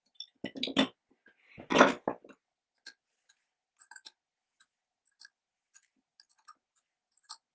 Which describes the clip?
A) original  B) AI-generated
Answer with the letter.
A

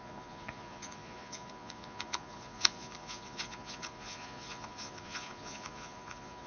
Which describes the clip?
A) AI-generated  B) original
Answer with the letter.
A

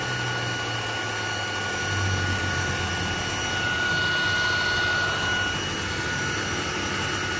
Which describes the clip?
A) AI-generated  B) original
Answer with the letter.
B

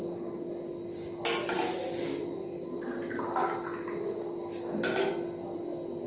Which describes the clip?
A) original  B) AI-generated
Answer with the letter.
A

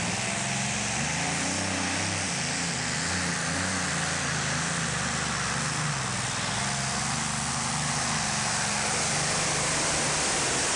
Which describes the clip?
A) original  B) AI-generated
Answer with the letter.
A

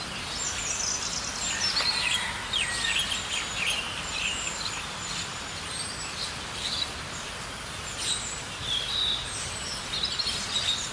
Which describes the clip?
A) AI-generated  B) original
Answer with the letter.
B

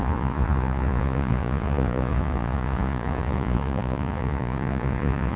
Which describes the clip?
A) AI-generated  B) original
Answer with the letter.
A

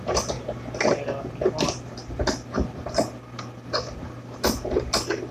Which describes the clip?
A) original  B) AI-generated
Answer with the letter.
A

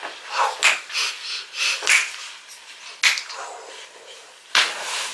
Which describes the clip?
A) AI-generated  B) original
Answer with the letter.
B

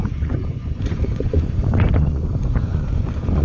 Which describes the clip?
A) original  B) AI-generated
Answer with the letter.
B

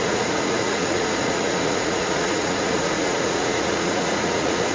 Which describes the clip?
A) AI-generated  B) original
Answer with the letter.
A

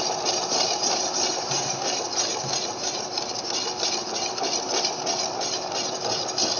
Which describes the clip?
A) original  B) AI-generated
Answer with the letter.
A